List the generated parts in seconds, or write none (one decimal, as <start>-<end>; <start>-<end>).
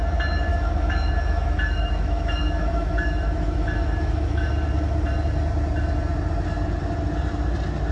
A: 0.5-4.5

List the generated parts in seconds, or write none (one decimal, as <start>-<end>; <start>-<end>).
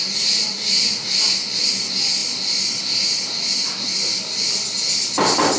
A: none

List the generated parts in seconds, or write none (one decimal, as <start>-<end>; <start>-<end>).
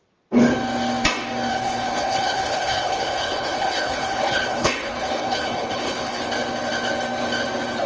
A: 1.5-6.2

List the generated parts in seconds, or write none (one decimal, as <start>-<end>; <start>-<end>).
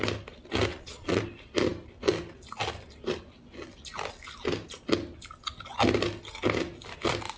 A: 0.7-1.2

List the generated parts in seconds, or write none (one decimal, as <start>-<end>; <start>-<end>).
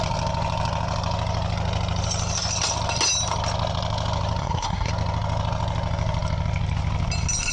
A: 4.4-4.9